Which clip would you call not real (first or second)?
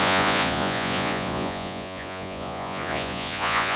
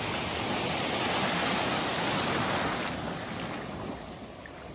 first